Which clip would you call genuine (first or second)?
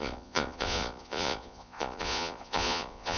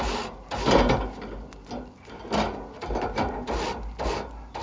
second